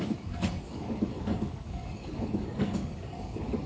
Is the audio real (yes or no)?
no